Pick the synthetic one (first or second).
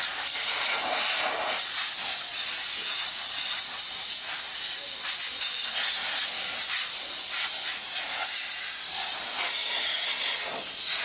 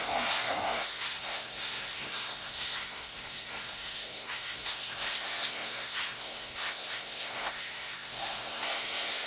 second